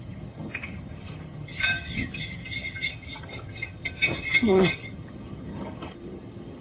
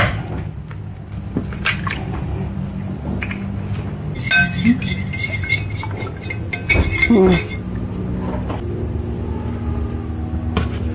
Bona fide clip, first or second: second